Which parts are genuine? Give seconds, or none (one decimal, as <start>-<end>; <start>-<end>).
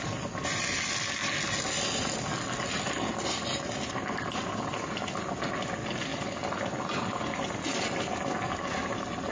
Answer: 0.0-9.3